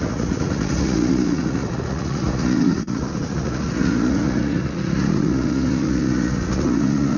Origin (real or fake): fake